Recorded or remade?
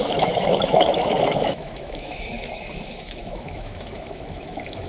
remade